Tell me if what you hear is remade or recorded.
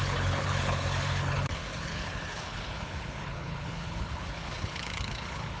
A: remade